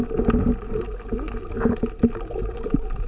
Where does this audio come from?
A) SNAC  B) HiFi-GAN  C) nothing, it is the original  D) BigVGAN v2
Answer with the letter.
C